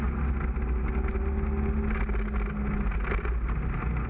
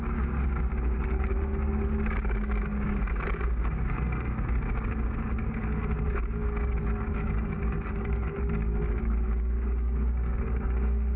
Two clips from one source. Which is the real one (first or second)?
first